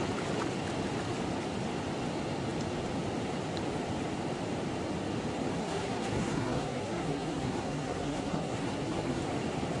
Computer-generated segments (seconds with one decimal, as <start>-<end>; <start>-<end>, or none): 5.6-9.2